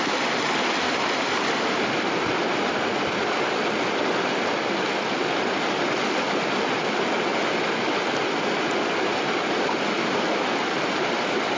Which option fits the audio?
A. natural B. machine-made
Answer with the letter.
A